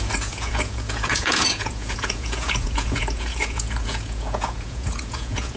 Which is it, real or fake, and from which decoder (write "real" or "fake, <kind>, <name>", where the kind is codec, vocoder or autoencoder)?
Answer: fake, vocoder, Vocos